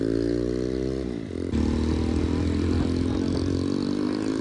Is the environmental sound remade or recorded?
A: recorded